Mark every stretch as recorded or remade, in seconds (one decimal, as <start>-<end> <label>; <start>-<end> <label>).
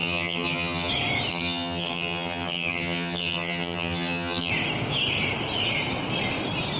0.0-0.9 remade; 0.9-1.3 recorded; 1.3-4.5 remade; 4.5-6.8 recorded